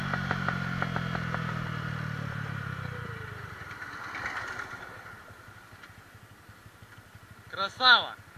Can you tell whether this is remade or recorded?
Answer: recorded